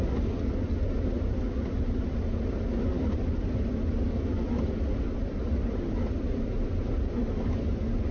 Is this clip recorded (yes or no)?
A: yes